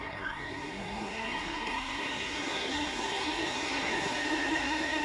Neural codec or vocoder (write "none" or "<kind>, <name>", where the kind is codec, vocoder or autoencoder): codec, SNAC